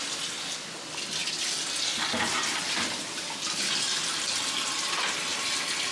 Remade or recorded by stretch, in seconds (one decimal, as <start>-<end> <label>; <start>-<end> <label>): 0.0-5.9 recorded